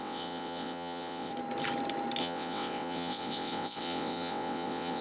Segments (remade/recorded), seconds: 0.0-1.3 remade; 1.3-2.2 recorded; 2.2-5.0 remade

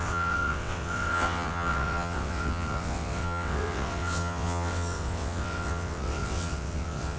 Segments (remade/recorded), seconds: 0.0-7.2 remade

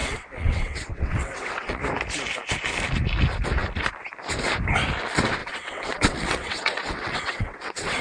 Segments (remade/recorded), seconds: 0.0-1.8 remade; 1.8-5.4 recorded; 5.4-8.0 remade

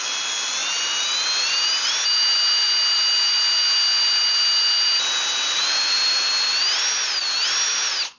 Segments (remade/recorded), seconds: 0.0-8.2 recorded

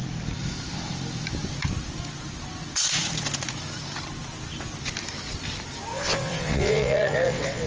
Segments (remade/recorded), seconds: 0.0-5.9 recorded; 5.9-7.7 remade

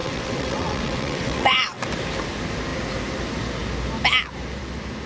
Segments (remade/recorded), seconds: 0.0-1.8 remade; 1.8-5.1 recorded

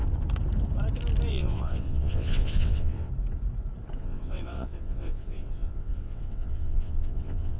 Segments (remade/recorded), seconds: 0.0-1.3 recorded; 1.3-3.1 remade; 3.1-4.0 recorded; 4.0-7.6 remade

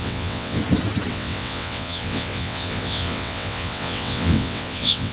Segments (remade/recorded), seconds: 0.0-0.6 remade; 0.6-1.1 recorded; 1.1-5.1 remade